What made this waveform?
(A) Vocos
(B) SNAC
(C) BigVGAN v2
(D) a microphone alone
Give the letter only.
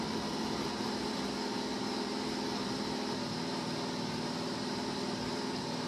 C